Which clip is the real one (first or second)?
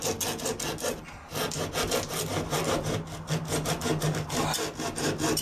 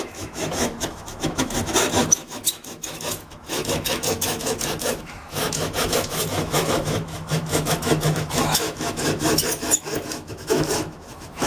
first